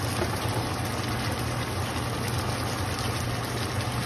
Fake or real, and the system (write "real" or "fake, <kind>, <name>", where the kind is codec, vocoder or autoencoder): real